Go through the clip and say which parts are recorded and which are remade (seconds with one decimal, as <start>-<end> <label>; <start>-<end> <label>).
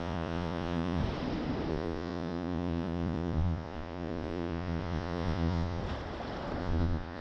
0.0-1.0 remade; 1.0-1.7 recorded; 1.7-5.8 remade; 5.8-6.6 recorded; 6.6-7.2 remade